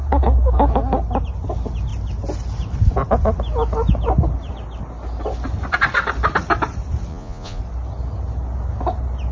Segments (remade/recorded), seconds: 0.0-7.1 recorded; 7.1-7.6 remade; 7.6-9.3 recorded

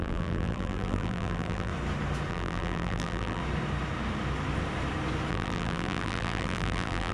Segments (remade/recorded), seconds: 0.0-1.7 remade; 1.7-2.3 recorded; 2.3-3.4 remade; 3.4-5.3 recorded; 5.3-7.1 remade

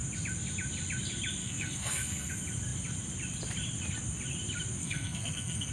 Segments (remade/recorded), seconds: 0.0-1.4 recorded; 1.4-2.3 remade; 2.3-4.8 recorded; 4.8-5.7 remade

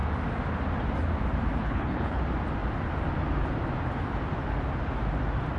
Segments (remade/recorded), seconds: 0.0-1.6 recorded; 1.6-2.2 remade; 2.2-5.6 recorded

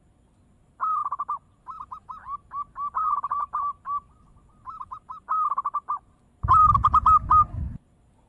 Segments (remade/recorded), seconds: 0.0-8.3 recorded

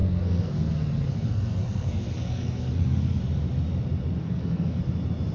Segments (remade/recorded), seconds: 0.0-3.2 remade; 3.2-4.2 recorded; 4.2-4.8 remade; 4.8-5.3 recorded